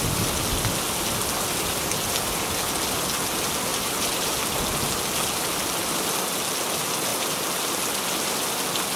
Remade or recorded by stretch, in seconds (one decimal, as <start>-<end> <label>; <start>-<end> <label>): 0.0-3.7 recorded; 3.7-4.4 remade; 4.4-9.0 recorded